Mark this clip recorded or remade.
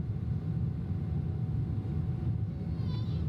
recorded